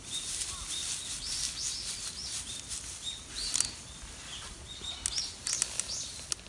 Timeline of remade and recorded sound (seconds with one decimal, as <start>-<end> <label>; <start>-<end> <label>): 0.0-6.5 recorded